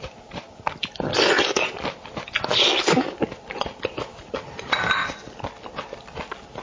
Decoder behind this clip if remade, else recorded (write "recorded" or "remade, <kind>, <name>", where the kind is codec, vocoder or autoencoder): recorded